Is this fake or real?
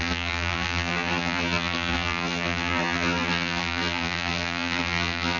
fake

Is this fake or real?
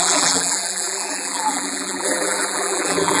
fake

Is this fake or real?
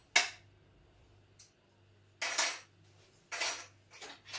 real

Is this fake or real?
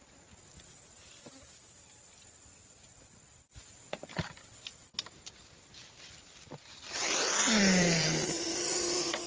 real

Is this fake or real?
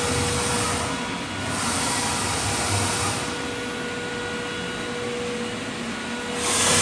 real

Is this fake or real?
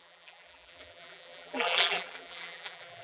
fake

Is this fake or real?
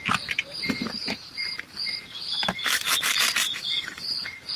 fake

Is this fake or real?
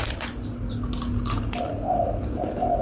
real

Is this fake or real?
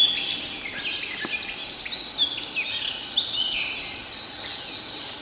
real